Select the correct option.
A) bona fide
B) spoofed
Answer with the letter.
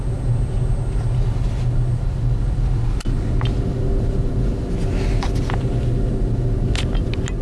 A